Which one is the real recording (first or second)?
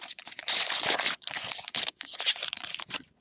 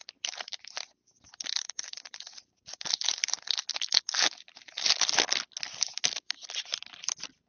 second